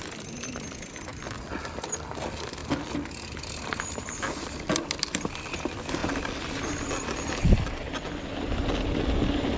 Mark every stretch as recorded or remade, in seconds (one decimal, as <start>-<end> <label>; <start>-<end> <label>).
0.0-9.6 recorded